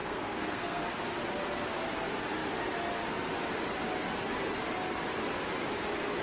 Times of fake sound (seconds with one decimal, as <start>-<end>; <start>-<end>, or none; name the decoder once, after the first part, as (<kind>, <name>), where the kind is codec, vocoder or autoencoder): 0.0-0.8 (codec, SNAC)